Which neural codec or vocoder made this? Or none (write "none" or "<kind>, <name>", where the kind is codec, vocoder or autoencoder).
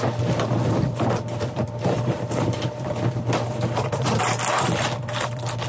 vocoder, BigVGAN v2